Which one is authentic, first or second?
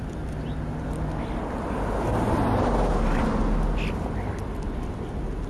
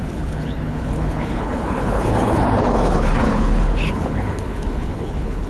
first